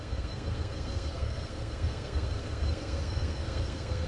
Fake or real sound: fake